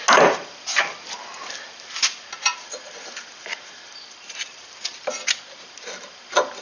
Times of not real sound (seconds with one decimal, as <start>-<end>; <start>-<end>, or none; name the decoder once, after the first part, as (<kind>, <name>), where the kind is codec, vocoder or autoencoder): none